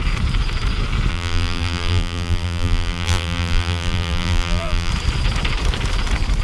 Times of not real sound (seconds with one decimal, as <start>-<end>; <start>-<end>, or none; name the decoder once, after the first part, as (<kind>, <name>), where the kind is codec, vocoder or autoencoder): 1.1-4.9 (vocoder, BigVGAN v2)